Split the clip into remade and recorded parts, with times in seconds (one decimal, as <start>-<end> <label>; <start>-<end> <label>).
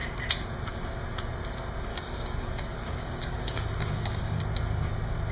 0.0-1.9 recorded; 1.9-4.4 remade; 4.4-5.3 recorded